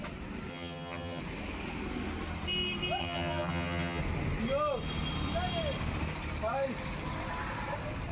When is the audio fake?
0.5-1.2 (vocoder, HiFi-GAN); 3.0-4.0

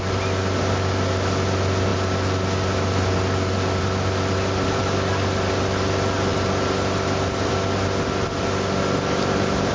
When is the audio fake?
none

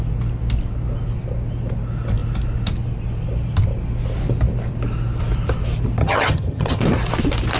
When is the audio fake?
6.0-6.8 (vocoder, HiFi-GAN)

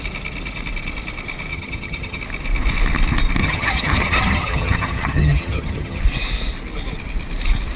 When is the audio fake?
1.5-2.2 (vocoder, HiFi-GAN); 3.4-6.0

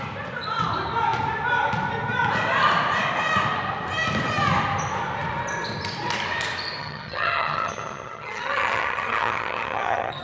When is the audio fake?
6.8-10.2 (vocoder, HiFi-GAN)

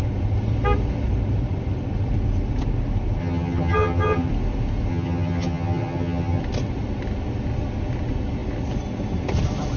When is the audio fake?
3.2-4.3 (vocoder, HiFi-GAN); 4.9-6.4